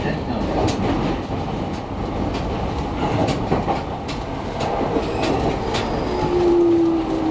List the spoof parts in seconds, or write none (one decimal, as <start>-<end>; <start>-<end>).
none